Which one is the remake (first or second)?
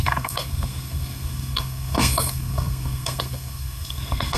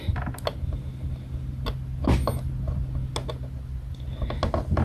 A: first